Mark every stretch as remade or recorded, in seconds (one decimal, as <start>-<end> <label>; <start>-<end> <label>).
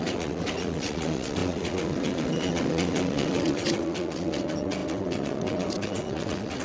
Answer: 0.0-6.6 remade